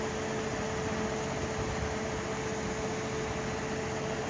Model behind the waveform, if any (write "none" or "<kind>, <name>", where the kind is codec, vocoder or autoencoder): none